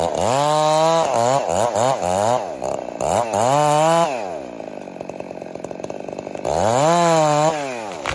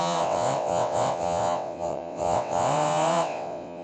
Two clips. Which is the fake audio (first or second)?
second